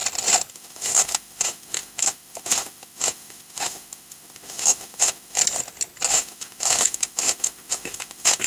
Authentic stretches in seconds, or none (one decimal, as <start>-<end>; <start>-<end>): 0.0-0.5; 5.4-6.1